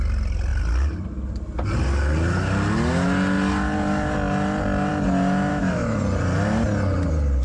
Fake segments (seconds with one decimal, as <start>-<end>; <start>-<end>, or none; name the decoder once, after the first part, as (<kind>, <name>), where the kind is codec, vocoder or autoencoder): 5.5-6.0 (autoencoder, DAC-VAE)